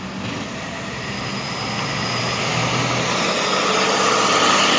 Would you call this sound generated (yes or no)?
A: no